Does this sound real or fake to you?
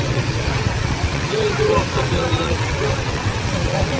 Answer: fake